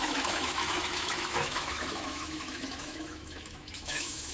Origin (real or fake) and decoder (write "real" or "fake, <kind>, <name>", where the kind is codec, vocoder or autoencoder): fake, autoencoder, DAC-VAE